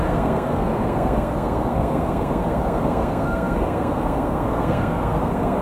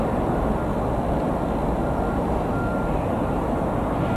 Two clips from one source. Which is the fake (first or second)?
first